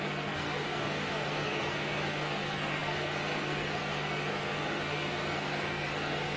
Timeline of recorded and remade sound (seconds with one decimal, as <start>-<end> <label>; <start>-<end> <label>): 0.0-6.4 remade